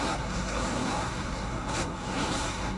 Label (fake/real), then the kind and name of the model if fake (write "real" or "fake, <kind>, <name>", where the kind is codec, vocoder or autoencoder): fake, codec, SNAC